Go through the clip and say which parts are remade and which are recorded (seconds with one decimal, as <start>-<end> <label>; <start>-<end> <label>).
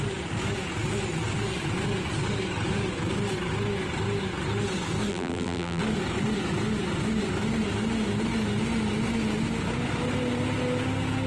0.0-5.1 recorded; 5.1-5.8 remade; 5.8-11.3 recorded